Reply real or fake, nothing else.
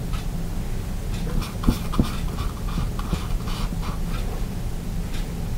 real